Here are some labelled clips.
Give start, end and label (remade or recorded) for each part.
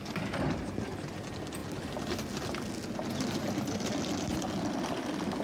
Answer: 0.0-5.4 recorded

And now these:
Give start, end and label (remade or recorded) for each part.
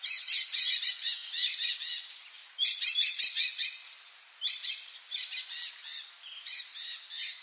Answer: 0.0-7.4 recorded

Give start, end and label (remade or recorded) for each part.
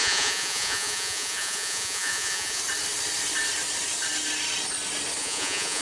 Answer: 0.0-2.6 remade; 2.6-5.2 recorded; 5.2-5.8 remade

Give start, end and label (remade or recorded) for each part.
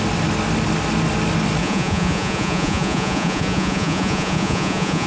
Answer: 0.0-1.6 recorded; 1.6-5.1 remade